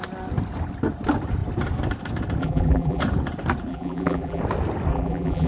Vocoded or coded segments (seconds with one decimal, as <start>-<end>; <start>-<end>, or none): 2.4-3.0; 3.7-4.4; 4.9-5.5